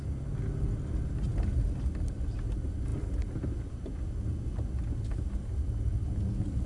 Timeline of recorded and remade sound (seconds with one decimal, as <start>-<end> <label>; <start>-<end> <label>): 0.0-6.7 recorded